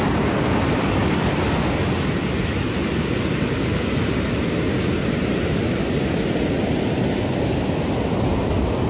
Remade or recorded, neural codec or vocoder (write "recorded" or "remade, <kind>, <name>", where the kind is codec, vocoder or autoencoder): recorded